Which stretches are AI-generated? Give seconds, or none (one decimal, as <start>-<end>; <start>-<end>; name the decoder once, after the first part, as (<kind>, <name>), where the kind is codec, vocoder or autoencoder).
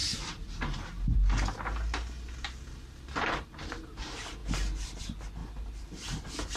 none